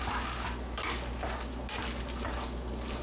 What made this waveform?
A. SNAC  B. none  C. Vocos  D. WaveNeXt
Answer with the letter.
B